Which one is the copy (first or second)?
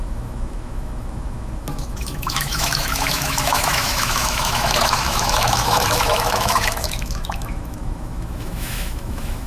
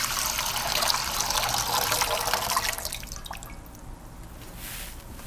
first